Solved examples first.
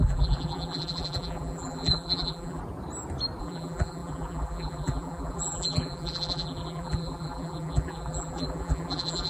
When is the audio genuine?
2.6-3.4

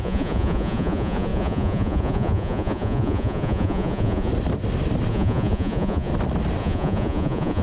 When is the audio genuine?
4.3-5.1; 6.1-6.6

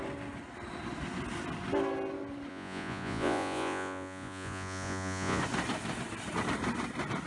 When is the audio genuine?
0.0-2.5; 5.4-7.3

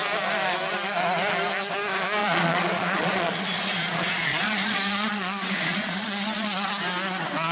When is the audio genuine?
0.0-2.2; 6.7-7.5

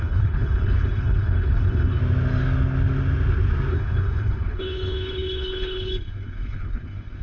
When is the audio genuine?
2.0-3.7

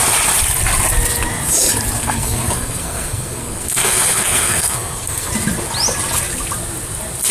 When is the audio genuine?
0.0-2.0; 5.3-7.3